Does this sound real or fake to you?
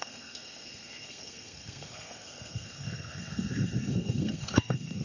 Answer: fake